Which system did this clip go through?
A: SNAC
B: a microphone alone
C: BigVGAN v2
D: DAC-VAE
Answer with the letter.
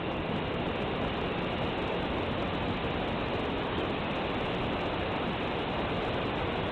B